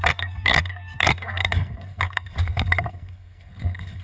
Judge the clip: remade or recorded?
remade